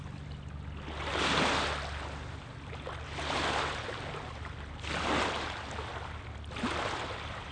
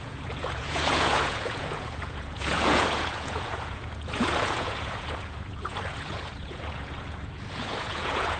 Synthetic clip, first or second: second